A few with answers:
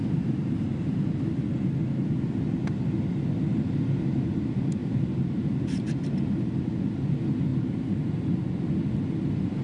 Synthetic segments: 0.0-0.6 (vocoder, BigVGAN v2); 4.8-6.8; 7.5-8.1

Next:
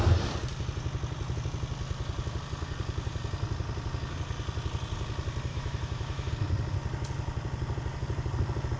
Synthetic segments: 5.5-6.3 (autoencoder, DAC-VAE)